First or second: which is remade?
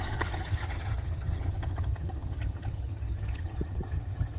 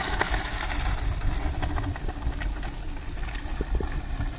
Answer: first